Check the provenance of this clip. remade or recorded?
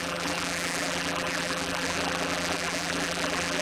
remade